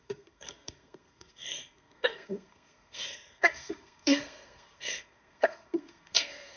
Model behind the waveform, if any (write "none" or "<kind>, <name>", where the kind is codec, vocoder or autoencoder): codec, SNAC